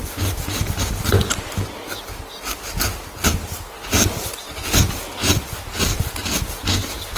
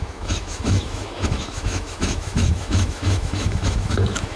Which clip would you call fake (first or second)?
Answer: second